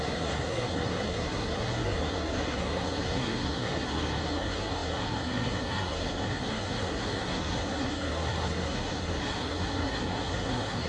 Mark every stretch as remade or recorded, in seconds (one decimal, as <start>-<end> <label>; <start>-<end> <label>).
0.0-10.9 remade